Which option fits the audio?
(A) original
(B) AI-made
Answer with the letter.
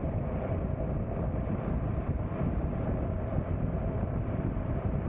A